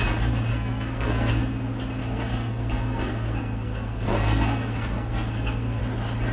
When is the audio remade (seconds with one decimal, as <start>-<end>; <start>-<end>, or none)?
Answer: 0.5-1.3; 2.0-5.8